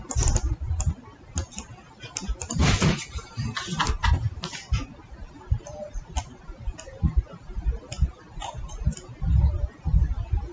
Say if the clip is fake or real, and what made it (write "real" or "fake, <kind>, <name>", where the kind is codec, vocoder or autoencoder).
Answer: real